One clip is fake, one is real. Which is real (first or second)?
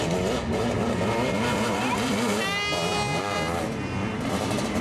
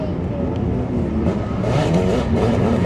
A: first